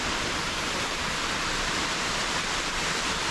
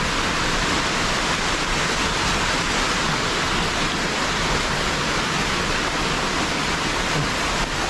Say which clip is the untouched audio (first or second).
second